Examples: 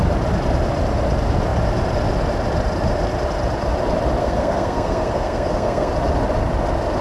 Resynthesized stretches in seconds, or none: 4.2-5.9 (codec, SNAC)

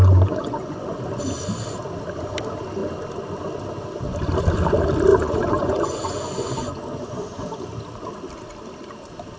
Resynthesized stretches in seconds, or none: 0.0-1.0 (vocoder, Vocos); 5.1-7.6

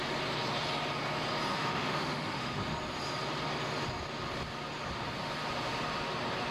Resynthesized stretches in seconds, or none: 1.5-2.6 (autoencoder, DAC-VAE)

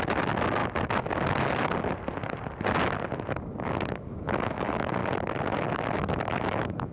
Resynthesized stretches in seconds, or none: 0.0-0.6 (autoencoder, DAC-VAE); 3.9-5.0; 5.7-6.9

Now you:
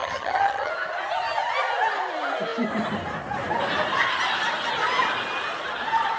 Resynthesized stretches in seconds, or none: 0.0-0.7 (vocoder, HiFi-GAN)

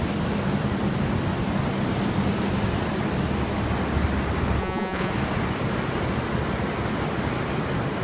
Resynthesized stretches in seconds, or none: 4.6-5.1 (vocoder, Vocos)

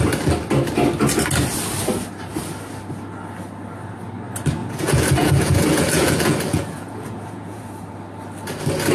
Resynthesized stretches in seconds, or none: 4.6-7.6 (vocoder, Vocos)